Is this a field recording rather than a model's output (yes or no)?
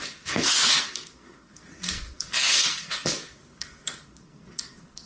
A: no